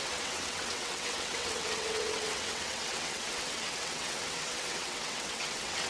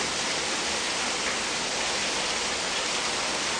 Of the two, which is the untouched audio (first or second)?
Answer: second